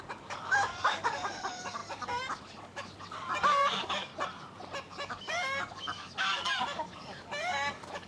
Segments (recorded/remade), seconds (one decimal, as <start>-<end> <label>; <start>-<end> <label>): 0.0-4.1 remade; 4.1-4.9 recorded; 4.9-8.1 remade